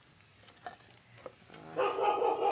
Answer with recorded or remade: recorded